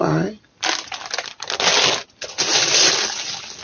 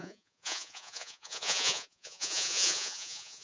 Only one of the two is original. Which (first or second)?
first